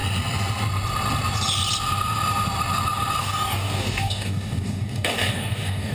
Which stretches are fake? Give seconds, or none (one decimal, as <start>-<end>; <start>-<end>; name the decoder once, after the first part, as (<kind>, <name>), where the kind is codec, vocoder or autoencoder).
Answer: 3.2-5.9 (codec, DAC)